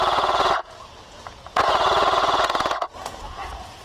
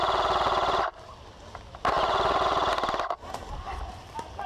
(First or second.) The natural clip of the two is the second